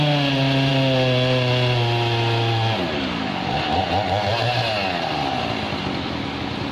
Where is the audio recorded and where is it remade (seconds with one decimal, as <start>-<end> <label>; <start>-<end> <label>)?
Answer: 0.0-6.7 recorded